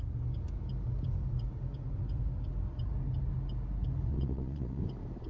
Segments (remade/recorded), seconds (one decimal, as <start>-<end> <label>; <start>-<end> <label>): 0.0-4.1 recorded; 4.1-4.8 remade; 4.8-5.3 recorded